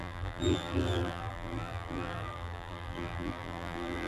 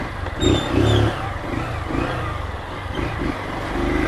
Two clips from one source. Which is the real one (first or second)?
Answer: second